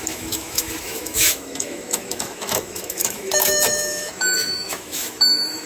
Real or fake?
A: fake